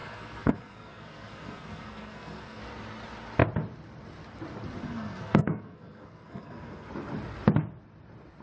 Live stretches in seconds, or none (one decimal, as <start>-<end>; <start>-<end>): 2.6-4.8; 6.9-8.4